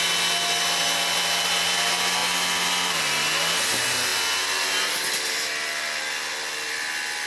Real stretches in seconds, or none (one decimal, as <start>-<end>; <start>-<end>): 0.0-7.3